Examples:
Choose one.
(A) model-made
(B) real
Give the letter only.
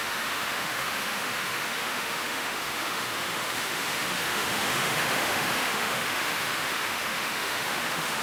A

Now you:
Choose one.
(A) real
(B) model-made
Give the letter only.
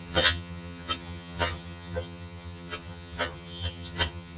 B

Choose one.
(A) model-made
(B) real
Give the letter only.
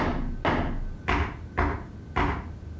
B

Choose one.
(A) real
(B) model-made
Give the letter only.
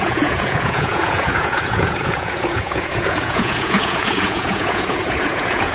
B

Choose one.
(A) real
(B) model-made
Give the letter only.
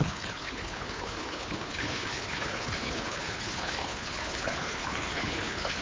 B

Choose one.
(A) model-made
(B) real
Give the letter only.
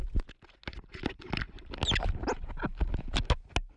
B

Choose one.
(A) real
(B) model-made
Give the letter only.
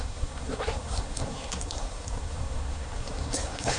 B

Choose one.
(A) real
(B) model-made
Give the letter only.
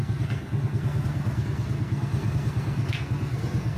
B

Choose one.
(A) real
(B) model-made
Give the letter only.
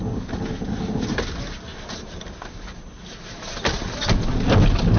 A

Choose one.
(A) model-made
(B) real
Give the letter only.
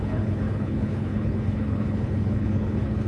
A